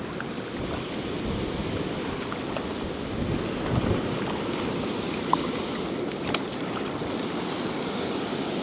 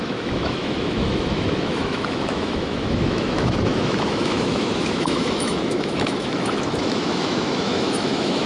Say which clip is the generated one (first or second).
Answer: second